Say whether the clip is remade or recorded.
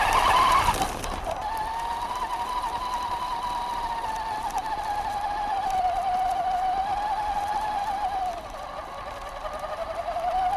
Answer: recorded